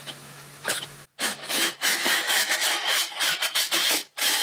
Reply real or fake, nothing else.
fake